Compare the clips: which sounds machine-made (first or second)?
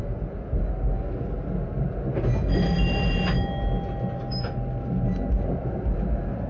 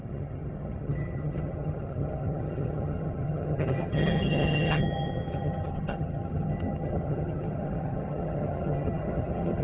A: second